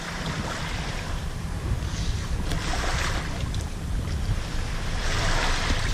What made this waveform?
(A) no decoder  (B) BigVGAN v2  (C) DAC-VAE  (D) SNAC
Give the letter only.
B